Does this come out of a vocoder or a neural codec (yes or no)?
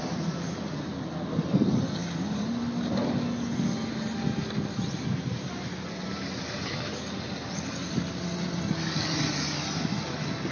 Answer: no